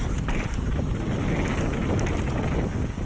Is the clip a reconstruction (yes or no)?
no